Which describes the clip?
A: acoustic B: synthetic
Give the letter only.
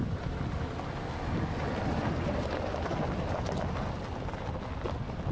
A